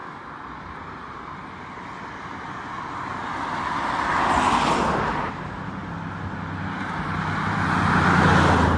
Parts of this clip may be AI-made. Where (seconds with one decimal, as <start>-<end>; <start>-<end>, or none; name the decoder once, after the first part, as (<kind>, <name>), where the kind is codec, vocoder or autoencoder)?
none